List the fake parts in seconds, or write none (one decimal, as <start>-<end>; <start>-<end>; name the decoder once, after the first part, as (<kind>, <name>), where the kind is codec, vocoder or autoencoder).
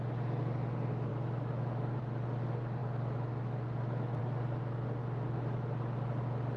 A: 1.1-2.0 (autoencoder, DAC-VAE); 2.8-4.2